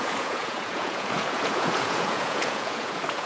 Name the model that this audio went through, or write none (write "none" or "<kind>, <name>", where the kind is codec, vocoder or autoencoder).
vocoder, Vocos